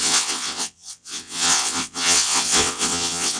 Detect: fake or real fake